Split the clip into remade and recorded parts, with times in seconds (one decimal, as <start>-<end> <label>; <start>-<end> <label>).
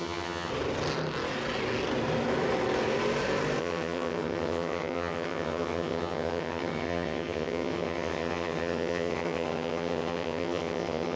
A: 0.0-0.5 remade; 0.5-3.6 recorded; 3.6-11.2 remade